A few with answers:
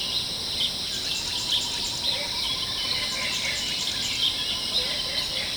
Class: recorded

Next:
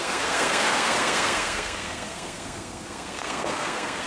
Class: remade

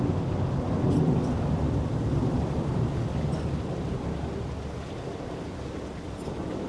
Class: recorded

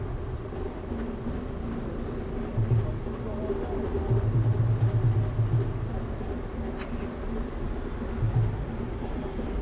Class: recorded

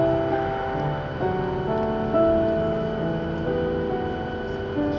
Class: recorded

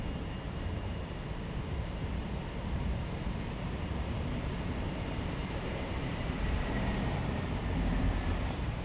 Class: remade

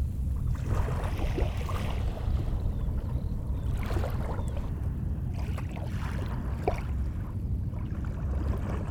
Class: recorded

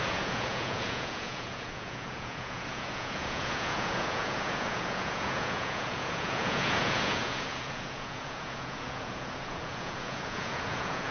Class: remade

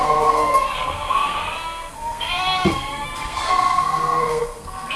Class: remade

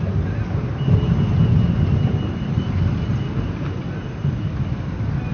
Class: recorded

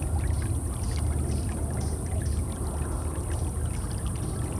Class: recorded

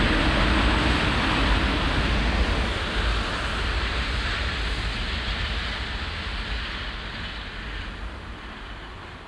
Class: recorded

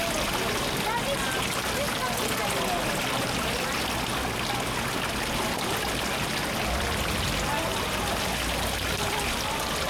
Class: recorded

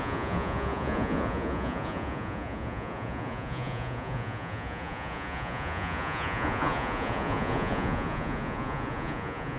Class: remade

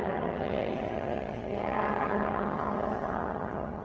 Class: remade